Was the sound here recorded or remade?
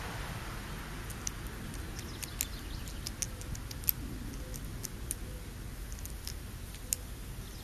recorded